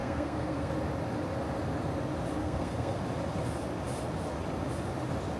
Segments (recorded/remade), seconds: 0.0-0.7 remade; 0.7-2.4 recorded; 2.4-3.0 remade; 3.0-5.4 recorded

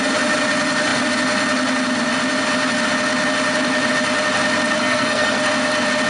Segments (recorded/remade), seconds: 0.0-4.8 recorded; 4.8-5.4 remade; 5.4-6.1 recorded

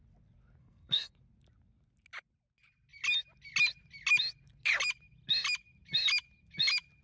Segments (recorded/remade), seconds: 0.0-0.6 recorded; 0.6-1.1 remade; 1.1-7.0 recorded

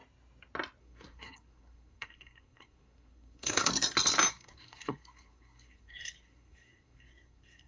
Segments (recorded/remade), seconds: 0.0-0.8 recorded; 0.8-3.7 remade; 3.7-4.3 recorded; 4.3-7.7 remade